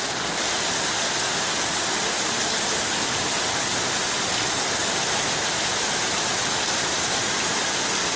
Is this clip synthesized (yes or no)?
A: no